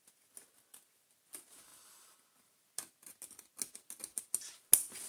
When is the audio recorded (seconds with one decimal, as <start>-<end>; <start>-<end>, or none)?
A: 0.0-5.1